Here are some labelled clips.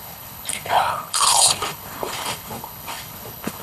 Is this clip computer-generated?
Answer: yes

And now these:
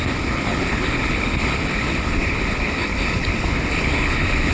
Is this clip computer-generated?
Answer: yes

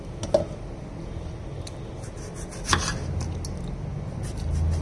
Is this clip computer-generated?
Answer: no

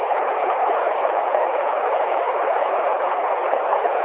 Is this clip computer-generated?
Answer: yes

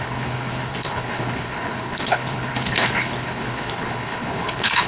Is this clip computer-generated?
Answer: yes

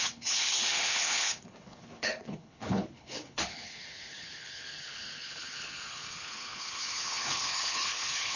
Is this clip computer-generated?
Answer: yes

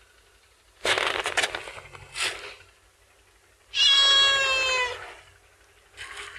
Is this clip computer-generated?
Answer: no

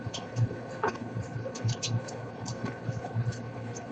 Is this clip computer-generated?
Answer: yes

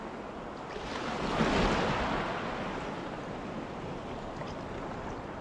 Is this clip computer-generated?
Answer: no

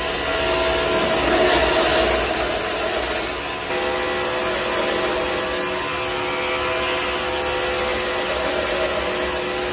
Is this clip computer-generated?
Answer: no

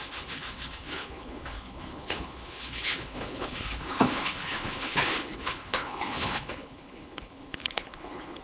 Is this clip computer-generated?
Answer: yes